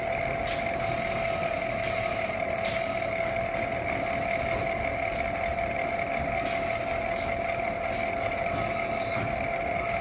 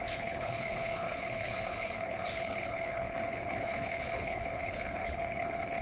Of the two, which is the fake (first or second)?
second